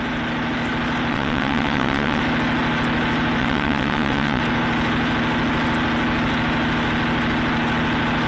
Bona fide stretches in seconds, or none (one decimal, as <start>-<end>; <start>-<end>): 0.0-1.1; 2.2-3.4; 4.4-8.3